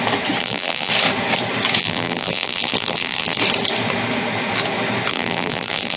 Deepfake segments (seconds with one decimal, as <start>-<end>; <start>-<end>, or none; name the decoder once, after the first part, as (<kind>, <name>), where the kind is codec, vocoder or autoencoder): 0.4-0.9 (vocoder, BigVGAN v2); 1.8-3.4; 5.1-6.0